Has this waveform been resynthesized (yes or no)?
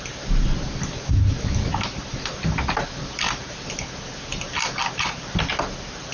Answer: no